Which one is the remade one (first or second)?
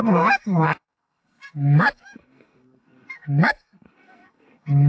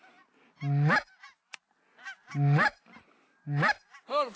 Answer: first